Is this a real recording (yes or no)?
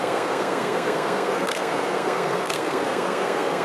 no